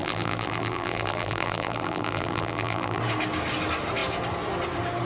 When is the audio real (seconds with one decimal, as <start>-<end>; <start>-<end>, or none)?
3.0-5.0